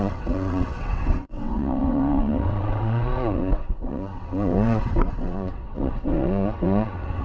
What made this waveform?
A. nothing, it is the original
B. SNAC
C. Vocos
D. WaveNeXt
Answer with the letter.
D